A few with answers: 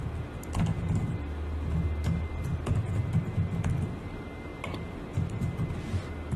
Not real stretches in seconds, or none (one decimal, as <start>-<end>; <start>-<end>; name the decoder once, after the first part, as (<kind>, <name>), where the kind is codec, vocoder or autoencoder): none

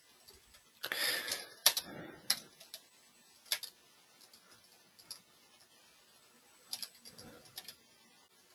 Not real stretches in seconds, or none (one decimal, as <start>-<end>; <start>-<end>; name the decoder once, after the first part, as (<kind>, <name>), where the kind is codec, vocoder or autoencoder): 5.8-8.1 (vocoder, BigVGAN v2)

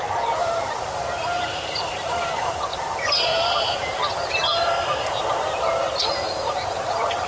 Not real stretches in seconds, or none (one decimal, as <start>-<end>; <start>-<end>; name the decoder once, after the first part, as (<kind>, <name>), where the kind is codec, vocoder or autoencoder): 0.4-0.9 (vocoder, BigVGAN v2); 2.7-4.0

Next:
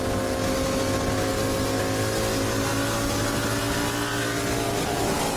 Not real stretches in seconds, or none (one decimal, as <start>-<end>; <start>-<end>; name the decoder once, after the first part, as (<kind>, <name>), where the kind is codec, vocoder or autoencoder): none